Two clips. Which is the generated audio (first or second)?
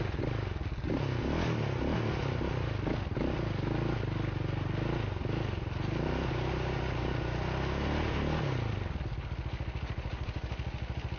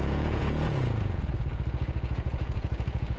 second